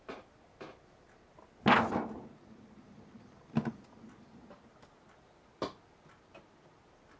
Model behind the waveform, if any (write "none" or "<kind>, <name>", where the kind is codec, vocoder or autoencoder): none